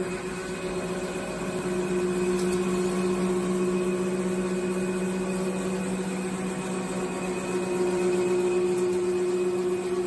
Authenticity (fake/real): real